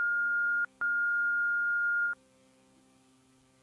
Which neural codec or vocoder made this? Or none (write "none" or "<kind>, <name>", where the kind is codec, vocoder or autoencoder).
codec, DAC